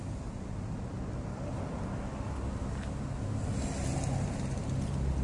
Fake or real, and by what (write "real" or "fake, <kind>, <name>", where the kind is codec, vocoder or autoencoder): real